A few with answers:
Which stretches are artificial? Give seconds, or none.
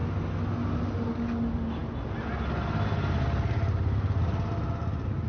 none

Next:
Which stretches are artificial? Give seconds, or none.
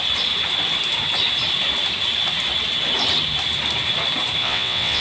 4.4-5.0 (vocoder, WaveNeXt)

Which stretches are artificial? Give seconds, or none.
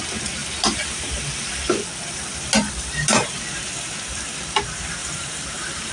5.0-5.9 (vocoder, BigVGAN v2)